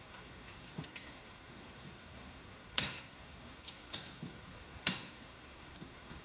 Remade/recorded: remade